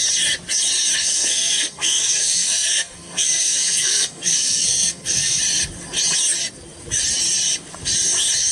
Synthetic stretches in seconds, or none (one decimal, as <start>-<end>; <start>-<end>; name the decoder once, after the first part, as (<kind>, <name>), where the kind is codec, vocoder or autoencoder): 1.0-5.4 (codec, SNAC)